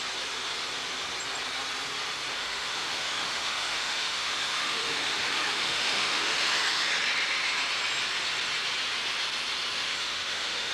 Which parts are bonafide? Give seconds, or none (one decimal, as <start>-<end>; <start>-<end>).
0.0-2.3; 6.9-9.7